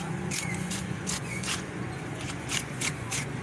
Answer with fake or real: fake